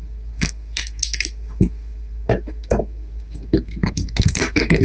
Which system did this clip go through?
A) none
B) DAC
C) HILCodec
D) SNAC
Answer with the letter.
D